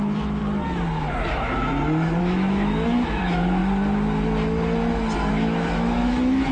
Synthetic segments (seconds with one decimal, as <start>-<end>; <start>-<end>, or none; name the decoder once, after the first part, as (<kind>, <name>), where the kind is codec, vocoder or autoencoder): 0.0-0.4 (autoencoder, DAC-VAE); 2.2-3.6; 5.3-6.5